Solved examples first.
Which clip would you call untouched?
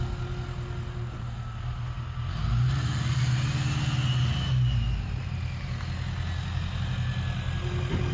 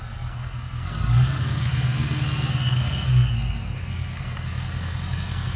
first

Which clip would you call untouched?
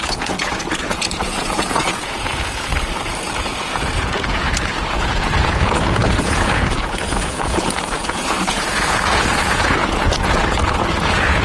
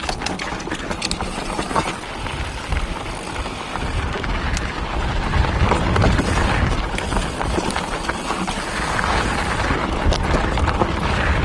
second